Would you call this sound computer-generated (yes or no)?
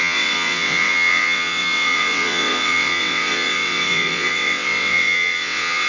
yes